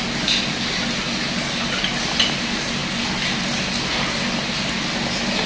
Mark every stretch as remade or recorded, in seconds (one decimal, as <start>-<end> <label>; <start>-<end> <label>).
0.0-5.5 recorded